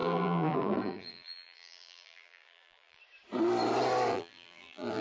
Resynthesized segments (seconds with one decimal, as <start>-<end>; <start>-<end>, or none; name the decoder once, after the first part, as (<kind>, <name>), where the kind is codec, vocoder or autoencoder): 0.0-3.0 (vocoder, BigVGAN v2); 4.1-5.0